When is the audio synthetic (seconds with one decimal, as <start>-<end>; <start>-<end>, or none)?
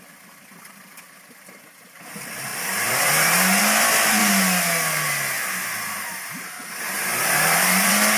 0.0-4.2; 6.3-8.2